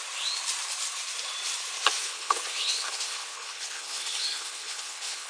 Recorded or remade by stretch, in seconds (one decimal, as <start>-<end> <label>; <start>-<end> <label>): 0.0-2.0 recorded; 2.0-5.3 remade